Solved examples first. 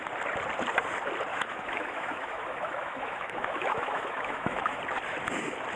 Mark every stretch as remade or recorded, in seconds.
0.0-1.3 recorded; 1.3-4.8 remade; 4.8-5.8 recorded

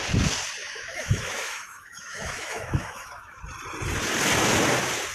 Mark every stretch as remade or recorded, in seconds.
0.0-0.6 recorded; 0.6-3.4 remade; 3.4-5.1 recorded

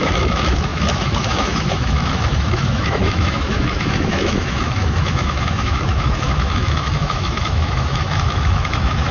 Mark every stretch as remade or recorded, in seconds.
0.0-9.1 remade

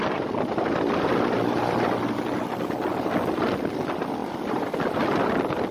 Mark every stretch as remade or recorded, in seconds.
0.0-5.7 recorded

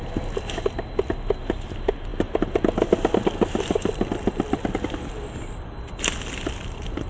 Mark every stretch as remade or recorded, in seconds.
0.0-7.1 recorded

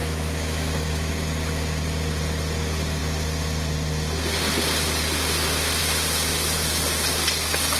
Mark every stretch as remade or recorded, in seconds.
0.0-1.1 remade; 1.1-6.3 recorded; 6.3-6.8 remade; 6.8-7.8 recorded

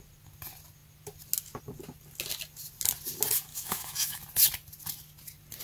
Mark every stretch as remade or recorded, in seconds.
0.0-3.5 recorded; 3.5-4.2 remade; 4.2-5.6 recorded

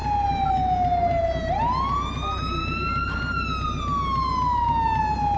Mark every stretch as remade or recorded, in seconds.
0.0-5.4 recorded